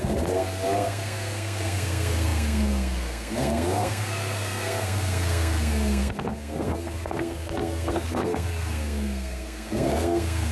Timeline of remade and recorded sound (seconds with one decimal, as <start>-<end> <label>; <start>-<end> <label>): 0.0-10.5 remade